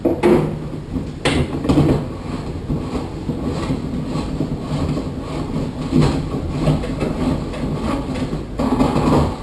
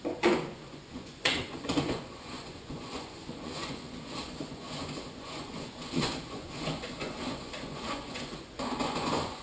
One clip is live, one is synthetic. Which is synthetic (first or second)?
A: second